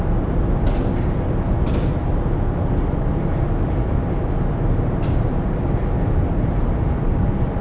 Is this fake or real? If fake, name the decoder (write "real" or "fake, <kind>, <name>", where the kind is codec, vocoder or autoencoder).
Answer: real